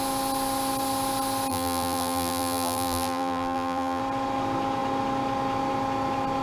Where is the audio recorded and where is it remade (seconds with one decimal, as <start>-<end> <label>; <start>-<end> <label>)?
0.0-1.5 recorded; 1.5-4.0 remade; 4.0-6.4 recorded